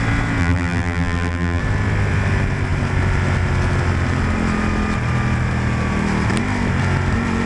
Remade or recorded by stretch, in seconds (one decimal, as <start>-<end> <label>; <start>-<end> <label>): 0.0-0.4 recorded; 0.4-1.6 remade; 1.6-7.5 recorded